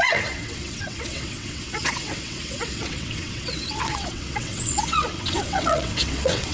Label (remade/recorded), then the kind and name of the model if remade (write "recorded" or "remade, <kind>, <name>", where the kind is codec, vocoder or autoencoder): remade, vocoder, WaveNeXt